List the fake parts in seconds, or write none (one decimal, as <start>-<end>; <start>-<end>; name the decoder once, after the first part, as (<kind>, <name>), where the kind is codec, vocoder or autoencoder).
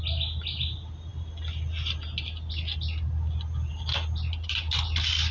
none